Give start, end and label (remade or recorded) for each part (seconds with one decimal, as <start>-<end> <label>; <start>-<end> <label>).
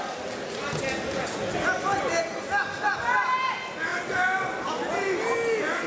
0.0-5.9 recorded